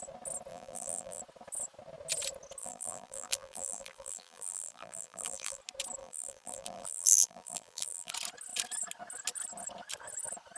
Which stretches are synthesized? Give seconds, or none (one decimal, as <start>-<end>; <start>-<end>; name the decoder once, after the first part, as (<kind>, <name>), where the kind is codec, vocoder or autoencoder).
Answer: 0.5-1.2 (vocoder, BigVGAN v2); 2.6-5.6; 6.0-8.1